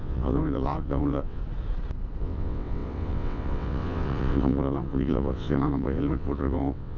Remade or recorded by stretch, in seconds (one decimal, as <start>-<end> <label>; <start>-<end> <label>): 0.0-1.4 remade; 1.4-2.2 recorded; 2.2-7.0 remade